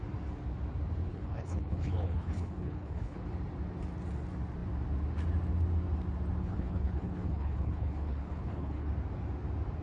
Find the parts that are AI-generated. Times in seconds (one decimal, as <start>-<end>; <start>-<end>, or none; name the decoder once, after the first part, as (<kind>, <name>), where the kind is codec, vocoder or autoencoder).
1.1-3.2 (codec, HILCodec); 6.4-8.9